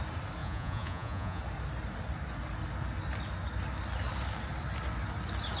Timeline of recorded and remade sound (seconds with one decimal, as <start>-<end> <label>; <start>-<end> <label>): 0.0-0.4 recorded; 0.4-1.4 remade; 1.4-5.6 recorded